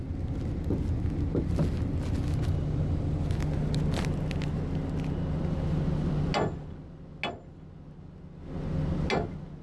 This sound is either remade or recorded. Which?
recorded